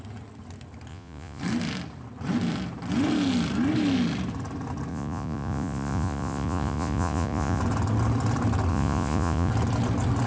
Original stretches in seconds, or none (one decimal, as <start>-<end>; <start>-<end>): 0.0-0.9; 1.4-4.9; 7.6-8.7; 9.5-10.3